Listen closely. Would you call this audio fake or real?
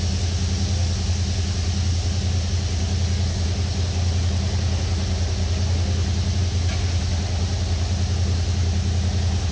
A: real